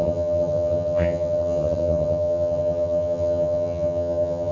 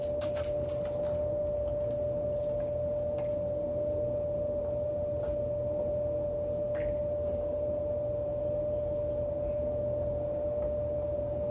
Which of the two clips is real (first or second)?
second